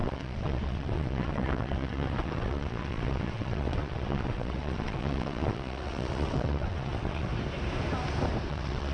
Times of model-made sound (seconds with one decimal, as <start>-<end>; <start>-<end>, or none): 0.0-7.3; 8.5-8.9